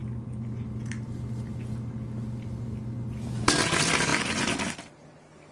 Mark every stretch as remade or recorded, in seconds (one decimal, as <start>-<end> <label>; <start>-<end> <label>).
0.0-5.5 recorded